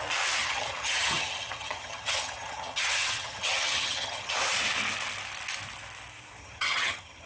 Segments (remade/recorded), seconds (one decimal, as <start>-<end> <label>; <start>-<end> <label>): 0.0-0.4 recorded; 0.4-4.3 remade; 4.3-6.4 recorded; 6.4-7.3 remade